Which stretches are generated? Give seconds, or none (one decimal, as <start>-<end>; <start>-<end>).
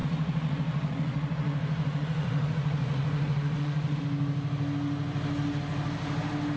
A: 0.0-4.0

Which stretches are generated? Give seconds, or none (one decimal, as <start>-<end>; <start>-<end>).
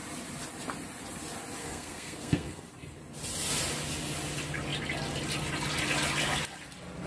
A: 1.6-2.7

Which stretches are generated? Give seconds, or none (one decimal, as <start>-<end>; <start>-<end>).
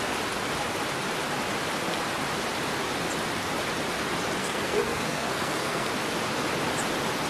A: 4.4-5.9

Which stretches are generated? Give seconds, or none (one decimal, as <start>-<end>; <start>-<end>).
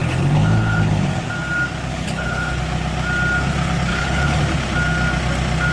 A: 0.0-1.2; 1.9-2.6; 3.9-4.4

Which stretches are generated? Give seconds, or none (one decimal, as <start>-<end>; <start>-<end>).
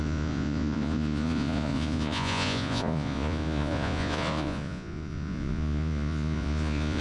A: 0.0-7.0